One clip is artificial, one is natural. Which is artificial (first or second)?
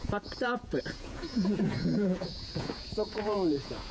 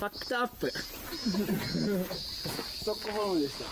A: first